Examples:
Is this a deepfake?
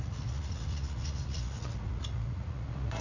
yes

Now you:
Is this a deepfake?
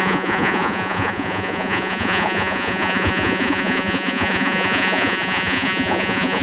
yes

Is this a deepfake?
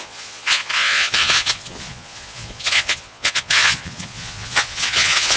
yes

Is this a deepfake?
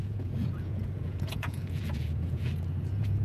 yes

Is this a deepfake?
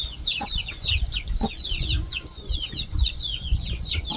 yes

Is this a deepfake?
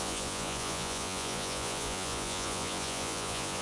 yes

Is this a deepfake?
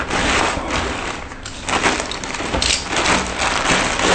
no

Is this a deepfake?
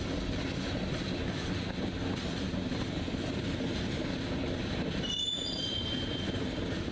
no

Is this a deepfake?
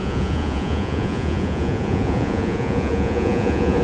yes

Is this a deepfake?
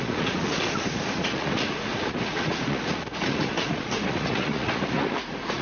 yes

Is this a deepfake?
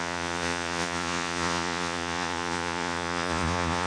yes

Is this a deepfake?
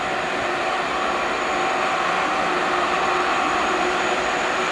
no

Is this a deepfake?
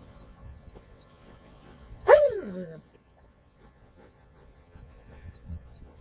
yes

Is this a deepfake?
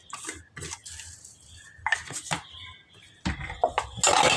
no